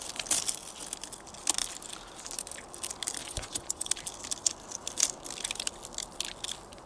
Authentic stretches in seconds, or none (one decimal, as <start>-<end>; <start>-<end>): 0.0-3.2; 3.9-6.9